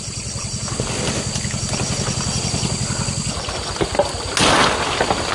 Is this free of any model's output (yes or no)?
yes